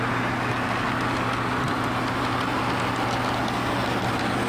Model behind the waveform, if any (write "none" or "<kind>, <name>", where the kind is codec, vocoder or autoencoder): none